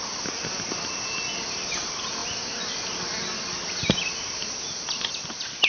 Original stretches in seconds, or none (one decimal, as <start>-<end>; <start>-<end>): 0.0-5.7